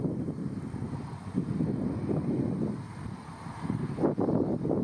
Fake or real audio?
real